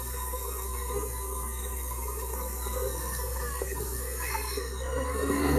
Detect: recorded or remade remade